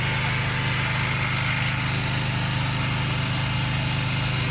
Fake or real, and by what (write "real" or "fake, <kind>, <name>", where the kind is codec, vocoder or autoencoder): real